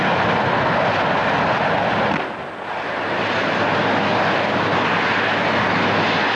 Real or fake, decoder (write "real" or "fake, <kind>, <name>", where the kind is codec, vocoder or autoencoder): real